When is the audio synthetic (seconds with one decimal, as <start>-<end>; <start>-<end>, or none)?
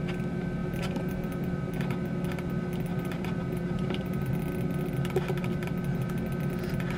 0.6-1.7; 2.9-4.3